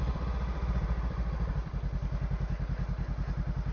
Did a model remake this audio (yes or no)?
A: no